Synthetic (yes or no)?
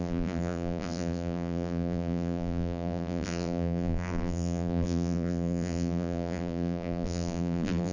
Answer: yes